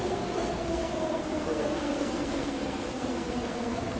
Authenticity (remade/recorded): remade